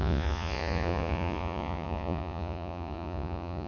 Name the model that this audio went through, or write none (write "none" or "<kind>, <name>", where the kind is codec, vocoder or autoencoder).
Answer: vocoder, Vocos